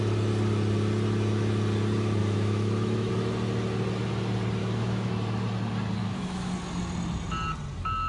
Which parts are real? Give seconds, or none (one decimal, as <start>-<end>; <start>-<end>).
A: 0.0-2.2; 3.1-4.6; 5.1-6.0; 6.5-8.1